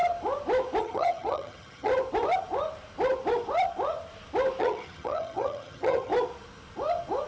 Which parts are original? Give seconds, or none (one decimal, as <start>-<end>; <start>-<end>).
0.0-0.8; 1.9-4.6; 6.1-7.3

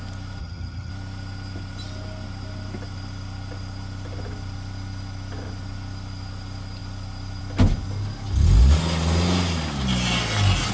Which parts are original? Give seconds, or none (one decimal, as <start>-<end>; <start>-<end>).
0.0-0.4; 0.9-10.7

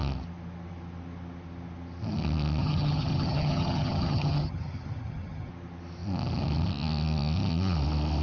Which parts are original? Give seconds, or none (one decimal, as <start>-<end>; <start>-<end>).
0.0-2.6; 5.5-8.2